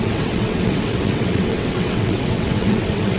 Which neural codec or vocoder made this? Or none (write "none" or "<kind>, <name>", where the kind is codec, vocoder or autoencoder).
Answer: vocoder, WaveNeXt